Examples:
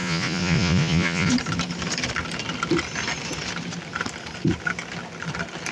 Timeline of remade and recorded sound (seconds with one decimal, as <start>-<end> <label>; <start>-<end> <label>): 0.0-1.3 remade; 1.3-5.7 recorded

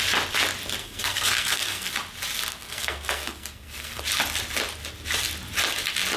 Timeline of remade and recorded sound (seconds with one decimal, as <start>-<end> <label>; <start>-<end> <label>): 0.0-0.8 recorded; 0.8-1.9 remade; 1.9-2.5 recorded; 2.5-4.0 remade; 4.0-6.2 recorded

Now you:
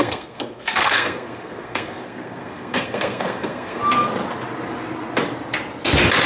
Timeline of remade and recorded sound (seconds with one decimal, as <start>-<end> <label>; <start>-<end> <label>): 0.0-3.8 remade; 3.8-6.3 recorded

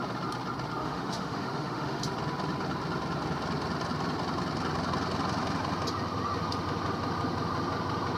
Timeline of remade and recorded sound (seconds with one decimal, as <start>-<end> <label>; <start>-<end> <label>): 0.0-0.8 recorded; 0.8-2.0 remade; 2.0-8.2 recorded

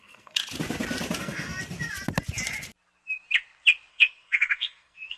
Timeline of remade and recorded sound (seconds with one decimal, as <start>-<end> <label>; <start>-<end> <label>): 0.0-0.4 remade; 0.4-1.2 recorded; 1.2-1.6 remade; 1.6-3.9 recorded; 3.9-5.2 remade